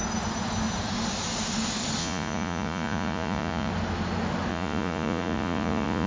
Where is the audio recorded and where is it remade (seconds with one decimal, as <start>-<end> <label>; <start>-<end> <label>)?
0.0-2.0 recorded; 2.0-3.7 remade; 3.7-4.5 recorded; 4.5-6.1 remade